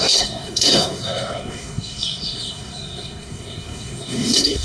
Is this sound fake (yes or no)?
yes